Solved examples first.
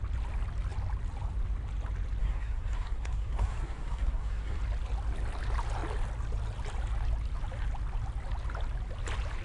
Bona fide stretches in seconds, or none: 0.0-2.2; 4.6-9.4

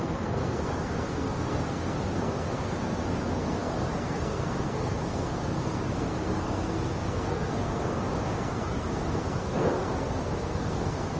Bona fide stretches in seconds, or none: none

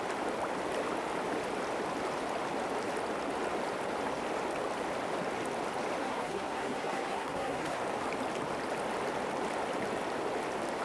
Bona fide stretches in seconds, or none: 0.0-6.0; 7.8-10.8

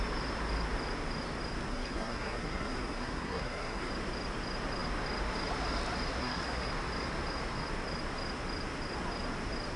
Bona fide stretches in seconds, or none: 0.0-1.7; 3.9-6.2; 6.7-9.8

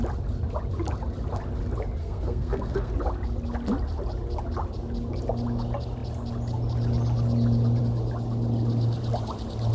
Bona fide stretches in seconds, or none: 0.0-2.0; 2.9-9.7

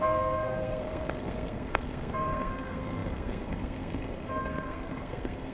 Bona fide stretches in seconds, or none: none

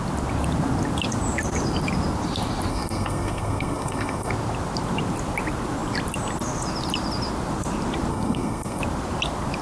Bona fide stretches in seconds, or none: 0.0-2.7; 4.3-8.1; 8.8-9.6

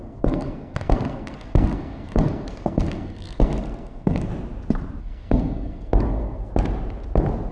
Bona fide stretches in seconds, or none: 4.3-5.0; 6.5-7.5